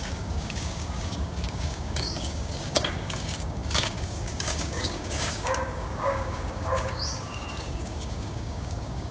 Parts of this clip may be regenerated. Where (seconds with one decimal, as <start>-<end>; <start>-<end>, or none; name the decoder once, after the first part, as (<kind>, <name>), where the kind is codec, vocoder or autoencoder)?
0.0-9.1 (codec, DAC)